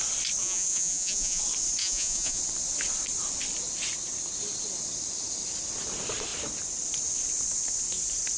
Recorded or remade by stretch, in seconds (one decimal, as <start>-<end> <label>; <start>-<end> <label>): 0.0-0.4 recorded; 0.4-1.4 remade; 1.4-1.8 recorded; 1.8-2.4 remade; 2.4-8.4 recorded